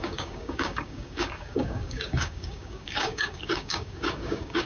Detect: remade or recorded remade